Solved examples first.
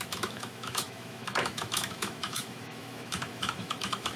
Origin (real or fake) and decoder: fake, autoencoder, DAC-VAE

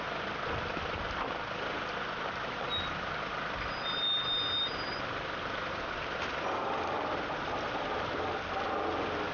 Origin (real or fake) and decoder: real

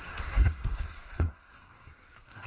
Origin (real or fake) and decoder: fake, codec, SNAC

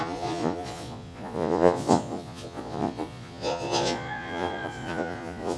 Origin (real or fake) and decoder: fake, vocoder, Vocos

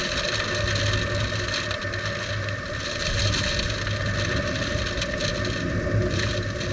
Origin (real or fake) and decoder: real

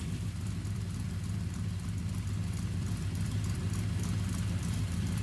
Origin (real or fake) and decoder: real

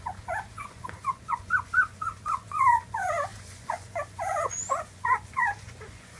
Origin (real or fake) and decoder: fake, vocoder, Vocos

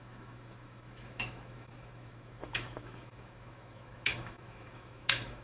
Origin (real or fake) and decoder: fake, autoencoder, DAC-VAE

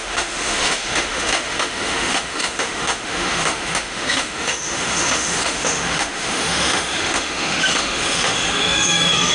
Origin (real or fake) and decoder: fake, autoencoder, DAC-VAE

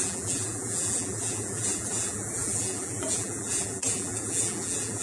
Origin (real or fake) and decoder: fake, vocoder, BigVGAN v2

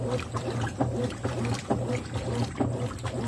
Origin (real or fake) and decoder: real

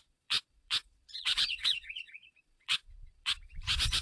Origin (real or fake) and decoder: fake, vocoder, Vocos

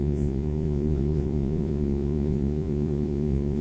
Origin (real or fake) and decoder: fake, vocoder, Vocos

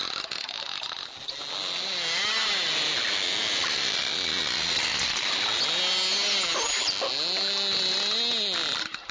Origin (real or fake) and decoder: real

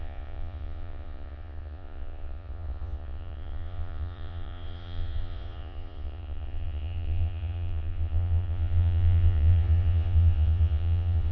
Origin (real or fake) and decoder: fake, vocoder, Vocos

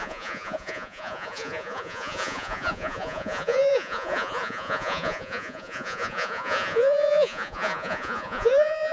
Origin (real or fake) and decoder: fake, vocoder, Vocos